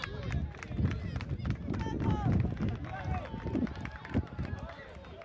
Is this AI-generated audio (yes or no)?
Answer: no